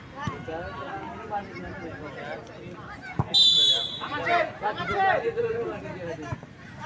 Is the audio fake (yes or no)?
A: no